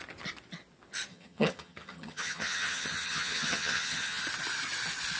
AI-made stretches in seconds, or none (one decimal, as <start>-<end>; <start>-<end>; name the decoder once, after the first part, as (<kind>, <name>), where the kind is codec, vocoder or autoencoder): 1.1-4.2 (vocoder, HiFi-GAN)